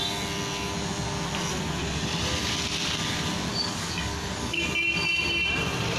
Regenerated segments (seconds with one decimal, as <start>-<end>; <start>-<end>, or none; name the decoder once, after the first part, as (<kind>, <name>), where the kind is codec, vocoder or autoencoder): 3.5-4.7 (codec, DAC)